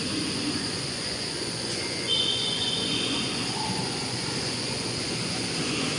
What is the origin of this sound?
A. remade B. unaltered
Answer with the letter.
A